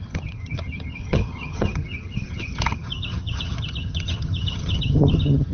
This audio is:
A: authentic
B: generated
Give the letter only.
B